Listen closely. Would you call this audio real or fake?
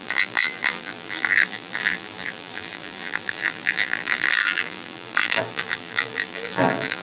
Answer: fake